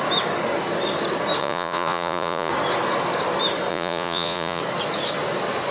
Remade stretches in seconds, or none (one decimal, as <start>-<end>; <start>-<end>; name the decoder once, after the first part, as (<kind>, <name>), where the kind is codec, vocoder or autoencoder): 1.4-2.5 (vocoder, Vocos); 3.7-4.6